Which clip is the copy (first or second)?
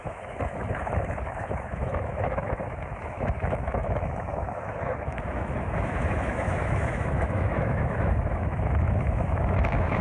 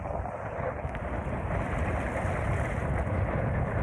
first